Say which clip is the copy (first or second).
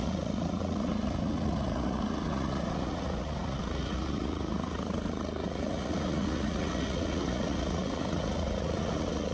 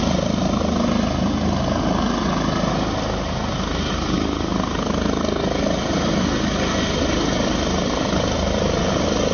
first